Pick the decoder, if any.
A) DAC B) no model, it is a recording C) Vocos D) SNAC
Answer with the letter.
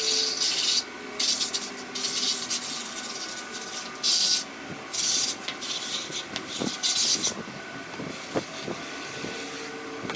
B